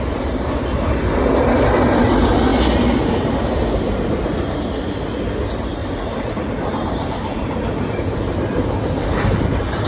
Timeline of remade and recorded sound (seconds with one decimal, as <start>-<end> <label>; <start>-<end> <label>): 0.0-5.8 recorded; 5.8-9.1 remade; 9.1-9.9 recorded